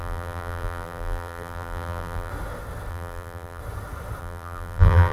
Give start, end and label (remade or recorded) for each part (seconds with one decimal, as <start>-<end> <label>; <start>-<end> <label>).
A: 0.0-2.3 remade; 2.3-2.9 recorded; 2.9-3.6 remade; 3.6-4.2 recorded; 4.2-5.1 remade